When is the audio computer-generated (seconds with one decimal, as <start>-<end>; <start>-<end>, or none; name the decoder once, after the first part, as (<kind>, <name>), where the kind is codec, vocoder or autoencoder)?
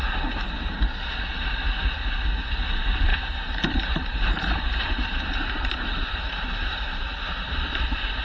3.1-6.5 (vocoder, BigVGAN v2)